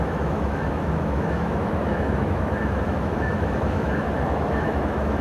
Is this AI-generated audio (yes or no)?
yes